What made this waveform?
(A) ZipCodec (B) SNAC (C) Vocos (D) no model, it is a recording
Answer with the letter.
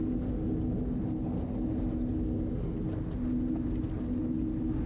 D